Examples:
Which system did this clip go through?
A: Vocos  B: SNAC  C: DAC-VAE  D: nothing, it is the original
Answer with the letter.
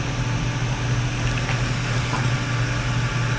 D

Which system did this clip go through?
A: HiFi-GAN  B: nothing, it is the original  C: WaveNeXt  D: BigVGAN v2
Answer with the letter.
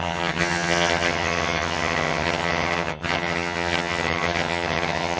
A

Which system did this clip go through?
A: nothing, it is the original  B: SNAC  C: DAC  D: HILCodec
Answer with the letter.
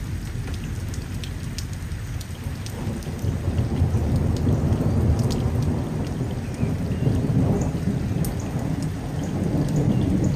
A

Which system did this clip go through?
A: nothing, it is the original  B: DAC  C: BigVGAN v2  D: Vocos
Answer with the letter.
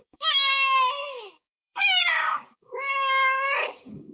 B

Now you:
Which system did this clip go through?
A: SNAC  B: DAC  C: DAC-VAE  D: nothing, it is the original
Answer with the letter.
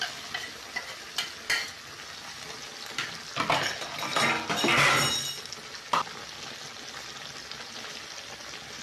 D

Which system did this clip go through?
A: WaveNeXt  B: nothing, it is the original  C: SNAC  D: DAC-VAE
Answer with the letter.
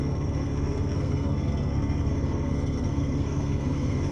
C